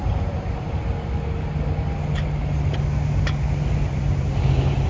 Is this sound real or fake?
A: real